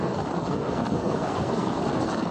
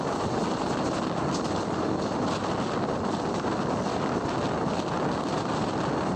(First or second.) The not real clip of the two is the first